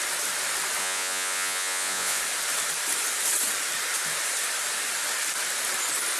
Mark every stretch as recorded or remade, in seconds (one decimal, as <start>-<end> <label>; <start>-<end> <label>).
0.0-0.8 recorded; 0.8-2.2 remade; 2.2-6.2 recorded